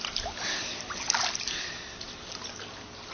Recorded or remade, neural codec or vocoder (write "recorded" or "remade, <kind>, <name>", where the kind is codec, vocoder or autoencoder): recorded